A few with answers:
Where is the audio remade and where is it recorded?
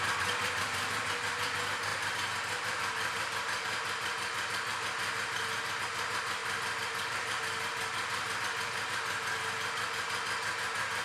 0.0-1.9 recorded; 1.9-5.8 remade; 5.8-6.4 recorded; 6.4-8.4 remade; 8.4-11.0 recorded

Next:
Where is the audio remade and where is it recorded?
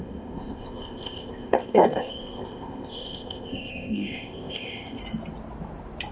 0.0-5.0 remade; 5.0-6.1 recorded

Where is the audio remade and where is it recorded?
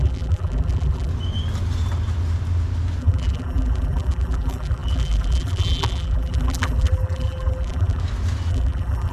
0.0-1.1 remade; 1.1-3.0 recorded; 3.0-8.0 remade; 8.0-8.5 recorded; 8.5-9.1 remade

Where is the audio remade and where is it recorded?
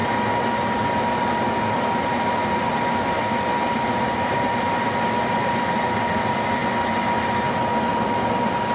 0.0-6.6 remade; 6.6-7.9 recorded; 7.9-8.7 remade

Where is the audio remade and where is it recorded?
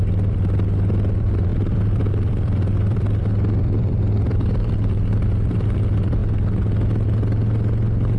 0.0-6.2 remade; 6.2-8.2 recorded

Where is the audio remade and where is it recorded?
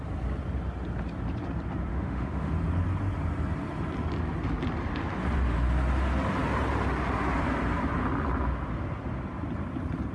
0.0-1.9 recorded; 1.9-2.5 remade; 2.5-10.1 recorded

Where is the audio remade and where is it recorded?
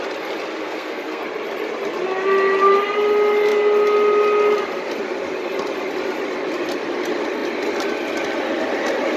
0.0-0.6 recorded; 0.6-1.2 remade; 1.2-9.2 recorded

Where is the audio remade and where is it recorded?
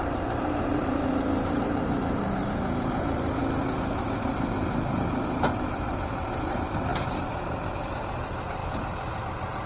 0.0-3.4 remade; 3.4-4.3 recorded; 4.3-8.6 remade; 8.6-9.2 recorded; 9.2-9.7 remade